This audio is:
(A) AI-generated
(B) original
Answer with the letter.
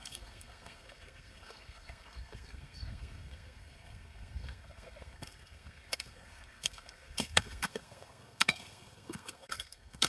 A